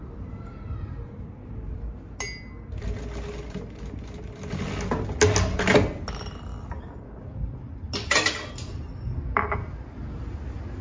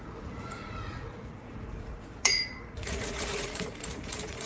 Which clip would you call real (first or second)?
first